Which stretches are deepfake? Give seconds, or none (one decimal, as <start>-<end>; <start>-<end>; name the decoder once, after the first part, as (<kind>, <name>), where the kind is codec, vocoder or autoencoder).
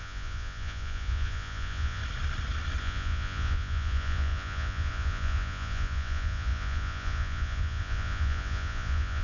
0.0-2.0 (vocoder, Vocos); 2.8-9.2